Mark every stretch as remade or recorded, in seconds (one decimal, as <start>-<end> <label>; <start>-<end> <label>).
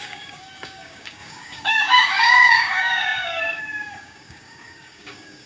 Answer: 0.0-5.5 remade